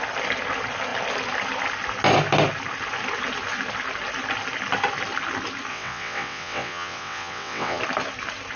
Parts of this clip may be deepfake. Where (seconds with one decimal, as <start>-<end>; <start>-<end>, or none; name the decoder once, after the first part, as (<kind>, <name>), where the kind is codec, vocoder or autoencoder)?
5.7-7.8 (vocoder, WaveNeXt)